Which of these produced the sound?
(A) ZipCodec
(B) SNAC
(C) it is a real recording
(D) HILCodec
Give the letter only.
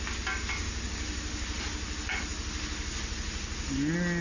C